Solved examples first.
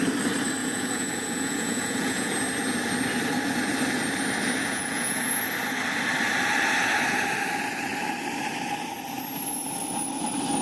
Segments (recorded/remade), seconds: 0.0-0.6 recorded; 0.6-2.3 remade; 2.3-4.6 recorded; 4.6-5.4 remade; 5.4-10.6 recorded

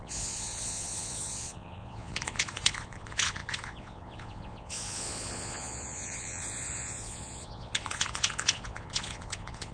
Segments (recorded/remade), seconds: 0.0-9.7 remade

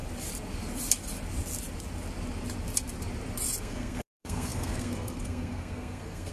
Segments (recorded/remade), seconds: 0.0-3.6 recorded; 3.6-6.3 remade

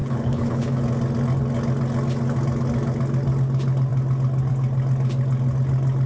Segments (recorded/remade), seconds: 0.0-0.8 remade; 0.8-6.1 recorded

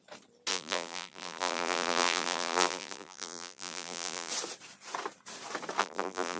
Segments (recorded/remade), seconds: 0.0-0.5 recorded; 0.5-4.3 remade; 4.3-5.8 recorded; 5.8-6.4 remade

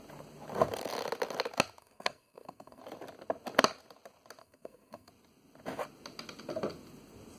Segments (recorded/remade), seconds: 0.0-1.8 recorded; 1.8-2.8 remade; 2.8-4.4 recorded; 4.4-5.1 remade; 5.1-7.4 recorded